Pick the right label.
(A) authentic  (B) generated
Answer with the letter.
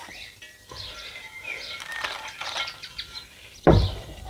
B